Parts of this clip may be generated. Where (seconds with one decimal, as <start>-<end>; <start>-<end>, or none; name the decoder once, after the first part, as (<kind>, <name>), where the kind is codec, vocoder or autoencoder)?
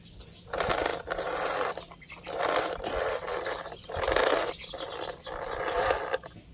none